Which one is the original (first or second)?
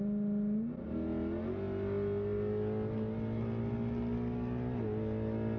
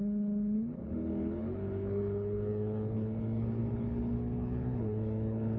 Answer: first